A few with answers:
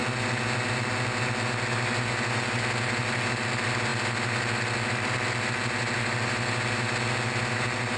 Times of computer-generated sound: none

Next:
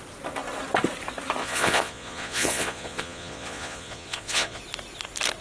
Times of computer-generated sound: 1.4-4.6 (vocoder, Vocos)

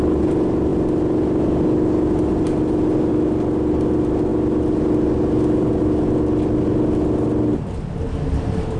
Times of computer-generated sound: none

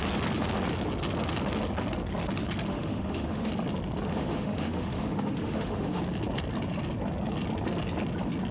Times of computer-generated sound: 2.7-3.5 (autoencoder, DAC-VAE); 4.1-6.0

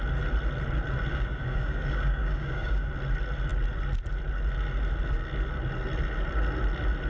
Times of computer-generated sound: 1.1-2.9 (codec, DAC)